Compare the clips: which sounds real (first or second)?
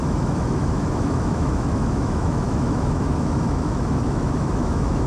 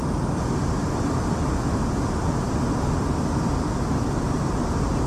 second